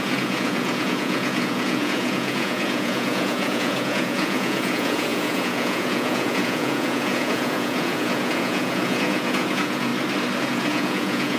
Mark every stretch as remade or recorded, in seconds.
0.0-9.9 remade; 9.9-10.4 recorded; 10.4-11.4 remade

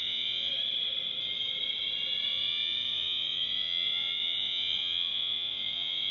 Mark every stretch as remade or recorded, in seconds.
0.0-0.5 remade; 0.5-2.3 recorded; 2.3-6.1 remade

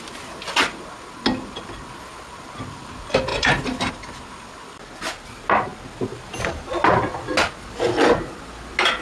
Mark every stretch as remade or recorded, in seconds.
0.0-9.0 recorded

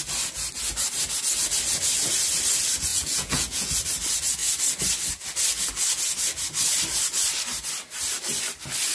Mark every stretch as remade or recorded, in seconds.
0.0-2.9 recorded; 2.9-3.7 remade; 3.7-8.9 recorded